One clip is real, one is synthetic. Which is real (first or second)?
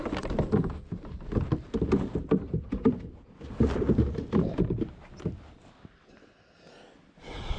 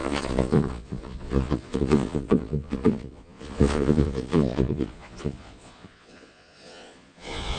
first